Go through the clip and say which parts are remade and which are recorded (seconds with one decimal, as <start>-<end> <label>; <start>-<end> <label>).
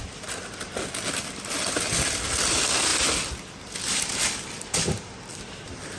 0.0-6.0 recorded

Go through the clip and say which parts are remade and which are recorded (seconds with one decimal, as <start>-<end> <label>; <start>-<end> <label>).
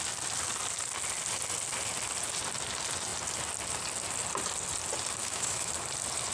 0.0-5.2 recorded; 5.2-5.7 remade; 5.7-6.3 recorded